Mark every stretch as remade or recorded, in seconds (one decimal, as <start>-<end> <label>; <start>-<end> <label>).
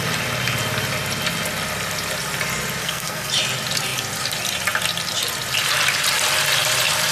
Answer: 0.0-2.8 recorded; 2.8-3.3 remade; 3.3-7.1 recorded